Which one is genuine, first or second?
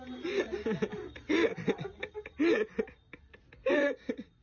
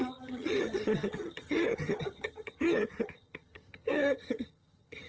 first